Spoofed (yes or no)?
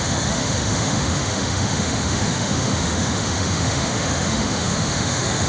yes